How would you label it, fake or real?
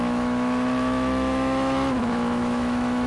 fake